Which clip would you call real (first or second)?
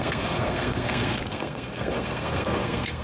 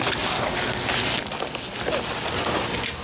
second